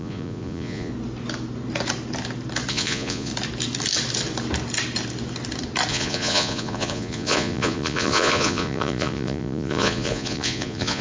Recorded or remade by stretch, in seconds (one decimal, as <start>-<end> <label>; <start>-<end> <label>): 0.0-0.9 remade; 0.9-2.7 recorded; 2.7-3.3 remade; 3.3-5.9 recorded; 5.9-11.0 remade